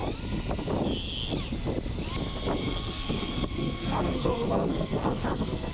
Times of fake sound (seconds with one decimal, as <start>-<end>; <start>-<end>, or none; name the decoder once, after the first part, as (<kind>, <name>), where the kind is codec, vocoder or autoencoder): 2.6-5.7 (codec, SNAC)